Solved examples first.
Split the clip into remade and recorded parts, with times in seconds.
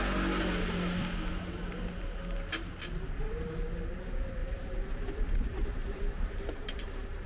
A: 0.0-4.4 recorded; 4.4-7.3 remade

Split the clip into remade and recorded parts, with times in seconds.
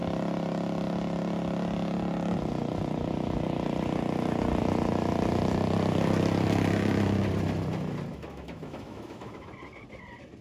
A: 0.0-8.1 recorded; 8.1-9.5 remade; 9.5-10.4 recorded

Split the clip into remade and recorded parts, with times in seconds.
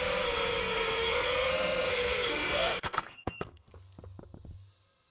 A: 0.0-0.6 recorded; 0.6-3.7 remade; 3.7-5.1 recorded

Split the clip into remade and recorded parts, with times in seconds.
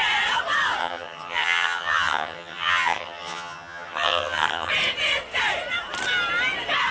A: 0.0-0.8 recorded; 0.8-4.7 remade; 4.7-6.9 recorded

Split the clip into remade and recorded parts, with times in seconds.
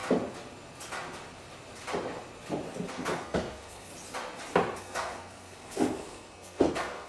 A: 0.0-2.9 recorded; 2.9-3.9 remade; 3.9-4.8 recorded; 4.8-7.1 remade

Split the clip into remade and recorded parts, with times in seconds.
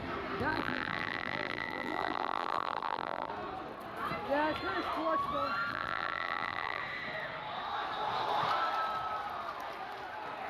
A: 0.0-0.5 recorded; 0.5-3.3 remade; 3.3-5.7 recorded; 5.7-6.8 remade; 6.8-10.5 recorded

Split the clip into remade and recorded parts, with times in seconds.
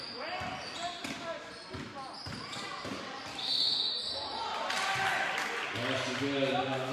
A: 0.0-3.4 recorded; 3.4-3.9 remade; 3.9-6.9 recorded